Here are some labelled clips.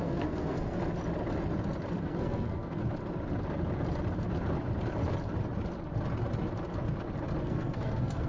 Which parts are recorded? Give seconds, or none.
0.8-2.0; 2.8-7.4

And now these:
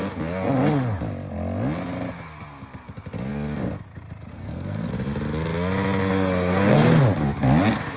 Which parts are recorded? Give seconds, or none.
0.0-4.3; 4.9-6.0; 7.0-8.0

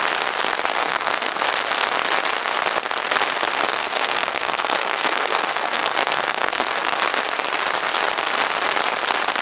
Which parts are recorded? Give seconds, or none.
0.0-0.8; 1.4-3.8; 7.0-9.4

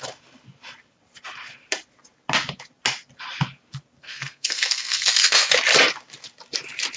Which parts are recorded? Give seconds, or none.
0.0-4.0; 5.5-7.0